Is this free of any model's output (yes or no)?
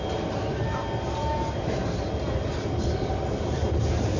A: yes